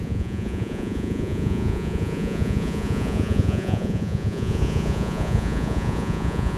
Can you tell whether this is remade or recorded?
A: remade